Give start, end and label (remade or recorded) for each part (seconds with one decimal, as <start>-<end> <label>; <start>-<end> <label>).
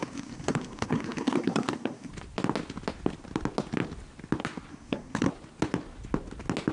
0.0-2.1 remade; 2.1-4.7 recorded; 4.7-5.3 remade; 5.3-6.7 recorded